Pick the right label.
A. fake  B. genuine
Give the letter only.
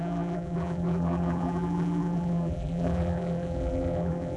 A